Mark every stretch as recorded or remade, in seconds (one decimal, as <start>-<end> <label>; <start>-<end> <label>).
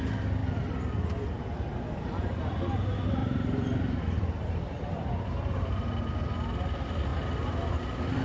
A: 0.0-0.4 recorded; 0.4-2.4 remade; 2.4-3.2 recorded; 3.2-6.1 remade; 6.1-8.2 recorded